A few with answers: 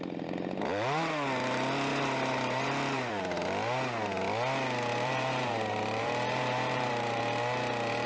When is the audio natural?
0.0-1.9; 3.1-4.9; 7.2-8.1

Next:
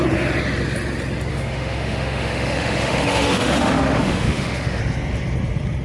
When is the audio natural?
0.0-1.3; 4.8-5.8

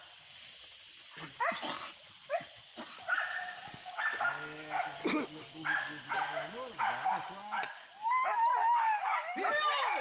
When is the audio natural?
0.0-3.3; 4.0-5.0; 5.9-7.1; 7.9-10.0

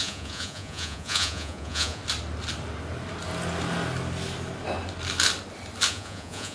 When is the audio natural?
2.0-5.9